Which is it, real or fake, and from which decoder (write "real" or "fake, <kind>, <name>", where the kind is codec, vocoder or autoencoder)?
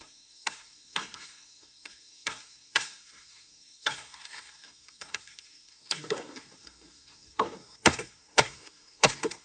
fake, codec, SNAC